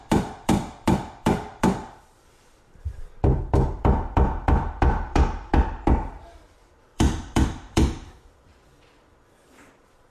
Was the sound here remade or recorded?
remade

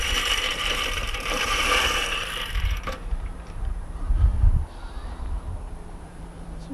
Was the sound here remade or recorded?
remade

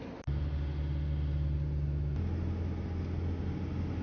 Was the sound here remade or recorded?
recorded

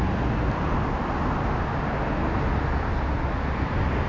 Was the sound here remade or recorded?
recorded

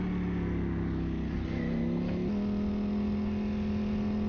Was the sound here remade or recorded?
recorded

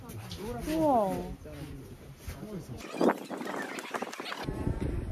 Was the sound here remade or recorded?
recorded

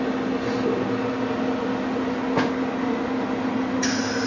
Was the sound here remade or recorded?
recorded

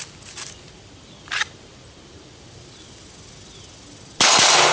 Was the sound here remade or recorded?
recorded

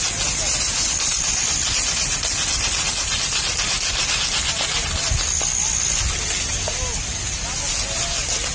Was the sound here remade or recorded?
recorded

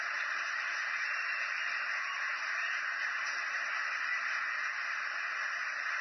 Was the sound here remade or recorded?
recorded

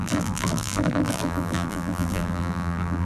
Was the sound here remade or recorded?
remade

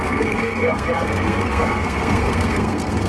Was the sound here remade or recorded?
remade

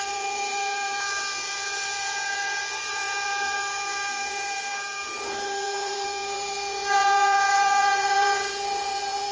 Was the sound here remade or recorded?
remade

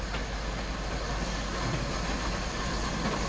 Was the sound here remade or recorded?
recorded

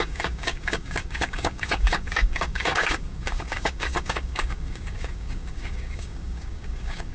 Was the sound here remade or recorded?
remade